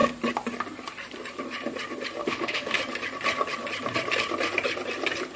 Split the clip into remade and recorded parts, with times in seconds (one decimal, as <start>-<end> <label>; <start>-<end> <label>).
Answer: 0.0-2.2 recorded; 2.2-2.8 remade; 2.8-5.4 recorded